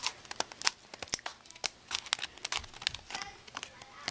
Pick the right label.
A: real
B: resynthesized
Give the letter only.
A